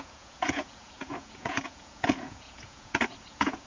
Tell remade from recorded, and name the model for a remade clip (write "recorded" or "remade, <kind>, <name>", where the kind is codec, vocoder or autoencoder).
remade, vocoder, Vocos